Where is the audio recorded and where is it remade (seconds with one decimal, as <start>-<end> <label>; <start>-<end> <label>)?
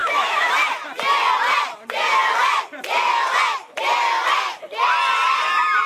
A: 0.0-0.5 remade; 0.5-5.9 recorded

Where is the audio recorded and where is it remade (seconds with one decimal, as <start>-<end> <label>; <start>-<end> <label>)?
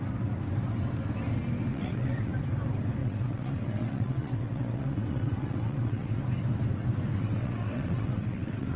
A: 0.0-1.7 recorded; 1.7-2.3 remade; 2.3-3.0 recorded; 3.0-6.2 remade; 6.2-7.1 recorded; 7.1-8.8 remade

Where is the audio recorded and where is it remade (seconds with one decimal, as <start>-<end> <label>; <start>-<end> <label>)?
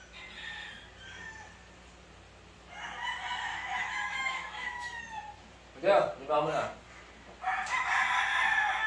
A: 0.0-3.5 recorded; 3.5-5.0 remade; 5.0-8.9 recorded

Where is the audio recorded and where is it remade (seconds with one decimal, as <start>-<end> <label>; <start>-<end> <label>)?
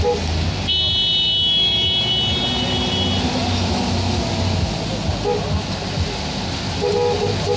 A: 0.0-7.6 recorded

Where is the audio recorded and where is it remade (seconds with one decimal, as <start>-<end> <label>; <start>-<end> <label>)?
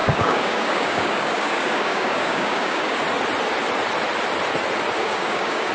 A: 0.0-3.0 remade; 3.0-5.0 recorded; 5.0-5.7 remade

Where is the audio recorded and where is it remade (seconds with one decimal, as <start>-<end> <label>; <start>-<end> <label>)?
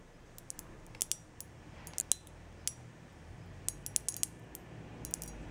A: 0.0-3.1 recorded; 3.1-3.6 remade; 3.6-5.5 recorded